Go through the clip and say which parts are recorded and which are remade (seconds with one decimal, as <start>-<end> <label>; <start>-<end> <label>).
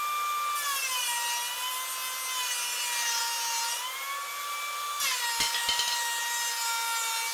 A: 0.0-7.3 recorded